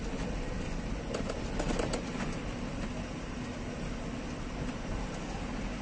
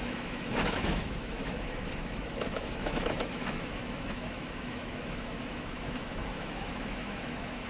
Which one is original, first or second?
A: first